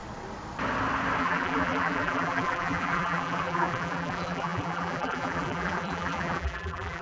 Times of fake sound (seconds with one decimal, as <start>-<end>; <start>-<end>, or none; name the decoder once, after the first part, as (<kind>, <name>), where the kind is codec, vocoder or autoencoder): 1.2-7.0 (vocoder, BigVGAN v2)